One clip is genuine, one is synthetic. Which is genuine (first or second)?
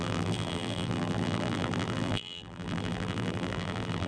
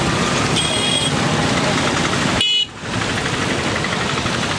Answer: second